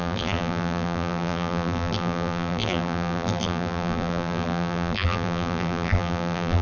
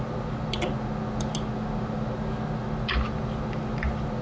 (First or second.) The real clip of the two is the second